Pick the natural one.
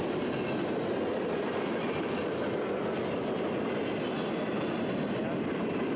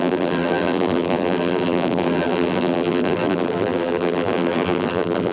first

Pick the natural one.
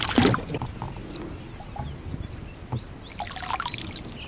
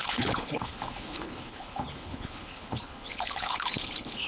first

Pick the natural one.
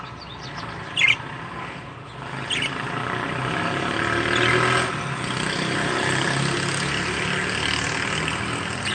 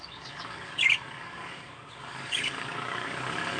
first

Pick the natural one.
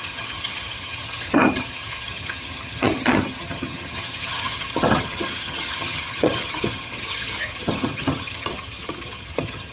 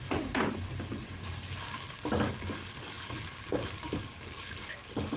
second